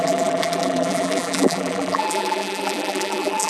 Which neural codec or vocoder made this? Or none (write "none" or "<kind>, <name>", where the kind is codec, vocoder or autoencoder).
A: vocoder, BigVGAN v2